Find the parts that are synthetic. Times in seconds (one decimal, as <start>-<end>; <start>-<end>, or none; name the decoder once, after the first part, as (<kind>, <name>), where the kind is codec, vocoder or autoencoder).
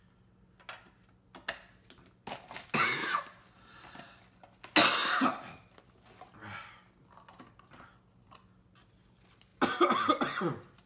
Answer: none